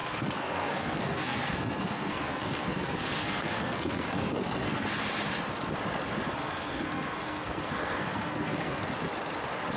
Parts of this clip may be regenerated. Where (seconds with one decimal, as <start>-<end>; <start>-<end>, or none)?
0.0-4.9; 6.4-8.9